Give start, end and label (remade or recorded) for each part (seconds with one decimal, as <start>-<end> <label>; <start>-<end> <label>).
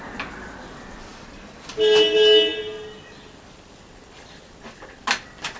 0.0-1.1 recorded; 1.1-1.7 remade; 1.7-5.6 recorded